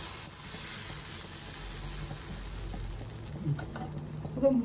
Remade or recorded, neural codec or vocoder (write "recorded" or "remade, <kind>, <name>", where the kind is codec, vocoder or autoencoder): recorded